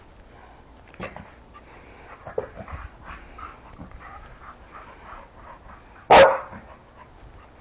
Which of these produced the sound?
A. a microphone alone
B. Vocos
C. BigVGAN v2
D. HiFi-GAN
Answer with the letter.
A